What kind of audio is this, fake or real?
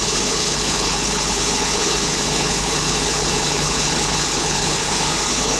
fake